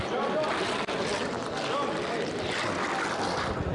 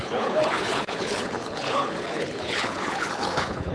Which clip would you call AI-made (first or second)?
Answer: second